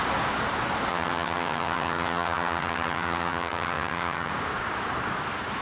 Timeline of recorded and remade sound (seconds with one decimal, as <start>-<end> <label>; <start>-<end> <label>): 0.0-0.9 recorded; 0.9-4.3 remade; 4.3-5.6 recorded